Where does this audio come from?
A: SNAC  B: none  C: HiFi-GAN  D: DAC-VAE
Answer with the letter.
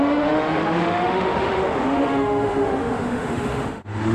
D